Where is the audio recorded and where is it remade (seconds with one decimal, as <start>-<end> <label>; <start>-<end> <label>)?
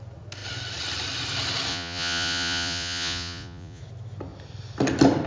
0.0-1.7 recorded; 1.7-3.8 remade; 3.8-5.3 recorded